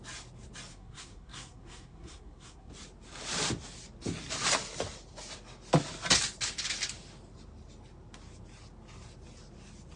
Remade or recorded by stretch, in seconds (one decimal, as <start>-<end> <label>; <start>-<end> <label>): 0.0-0.7 recorded; 0.7-2.7 remade; 2.7-10.0 recorded